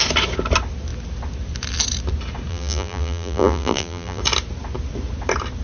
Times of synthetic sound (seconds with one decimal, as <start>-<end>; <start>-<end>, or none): 2.5-4.2